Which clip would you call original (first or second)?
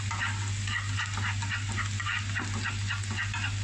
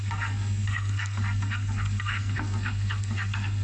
first